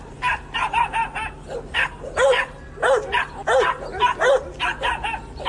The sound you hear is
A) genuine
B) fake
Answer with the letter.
A